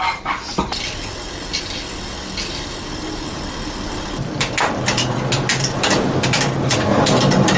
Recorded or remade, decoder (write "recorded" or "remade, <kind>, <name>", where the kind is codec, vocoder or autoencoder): recorded